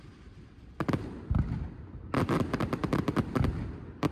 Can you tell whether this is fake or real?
fake